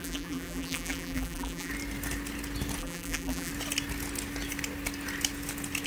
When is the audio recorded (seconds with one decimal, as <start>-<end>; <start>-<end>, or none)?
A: 1.7-2.8; 3.5-5.9